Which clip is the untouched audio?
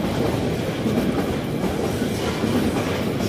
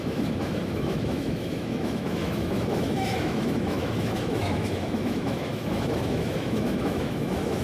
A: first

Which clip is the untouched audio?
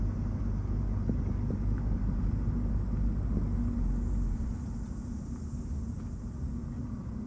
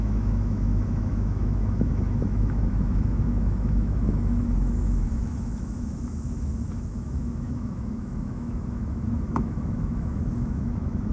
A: first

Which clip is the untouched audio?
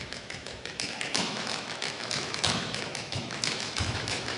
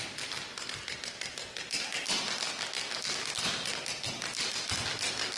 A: second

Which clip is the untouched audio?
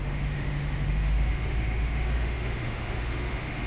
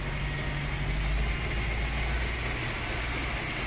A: second